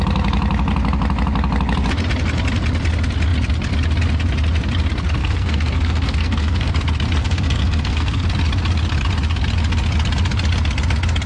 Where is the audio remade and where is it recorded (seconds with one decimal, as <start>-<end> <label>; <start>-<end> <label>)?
0.0-5.2 recorded; 5.2-6.7 remade; 6.7-7.2 recorded; 7.2-8.2 remade; 8.2-11.3 recorded